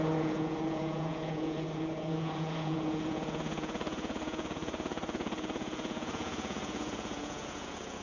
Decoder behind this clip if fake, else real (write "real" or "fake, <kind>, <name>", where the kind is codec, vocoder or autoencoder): fake, vocoder, Vocos